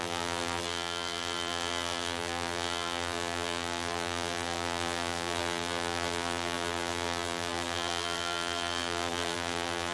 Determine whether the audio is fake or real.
fake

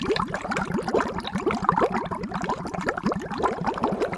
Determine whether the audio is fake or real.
fake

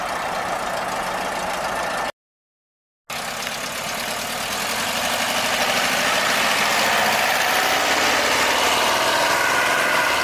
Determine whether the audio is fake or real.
real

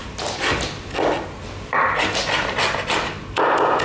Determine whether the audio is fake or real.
real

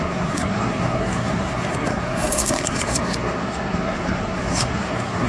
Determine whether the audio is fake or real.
fake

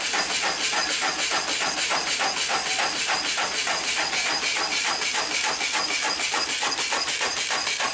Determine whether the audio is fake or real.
real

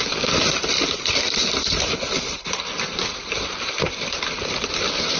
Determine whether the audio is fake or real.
fake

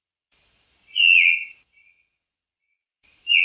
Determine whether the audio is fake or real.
fake